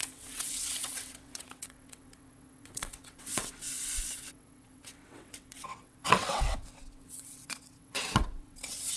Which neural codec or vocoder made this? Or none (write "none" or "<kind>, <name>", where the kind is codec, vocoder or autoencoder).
vocoder, WaveNeXt